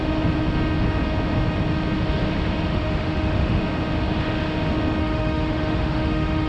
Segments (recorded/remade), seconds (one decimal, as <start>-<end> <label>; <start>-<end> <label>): 0.0-2.7 recorded; 2.7-3.6 remade; 3.6-5.0 recorded; 5.0-6.5 remade